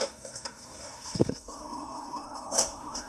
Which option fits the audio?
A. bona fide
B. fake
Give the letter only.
B